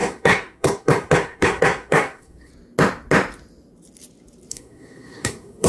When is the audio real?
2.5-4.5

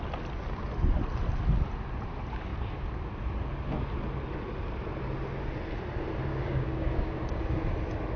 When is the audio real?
0.0-6.3; 7.6-8.2

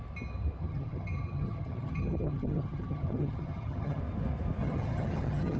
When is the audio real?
0.0-0.6; 4.0-4.6

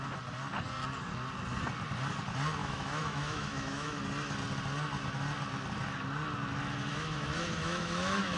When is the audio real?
0.0-2.6; 4.0-6.9

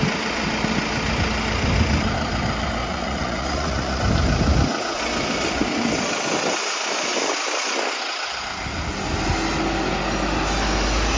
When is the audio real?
0.0-2.8; 4.0-11.2

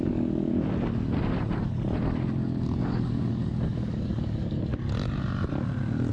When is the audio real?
0.5-2.8; 4.7-6.1